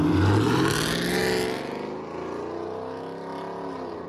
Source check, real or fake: real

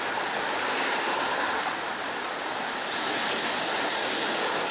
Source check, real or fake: real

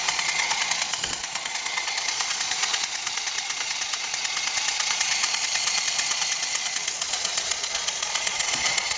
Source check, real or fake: fake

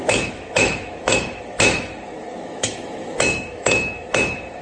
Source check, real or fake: fake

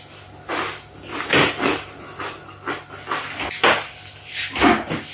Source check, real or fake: real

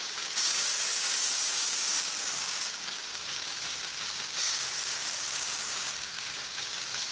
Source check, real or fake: fake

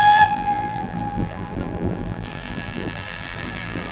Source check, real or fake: fake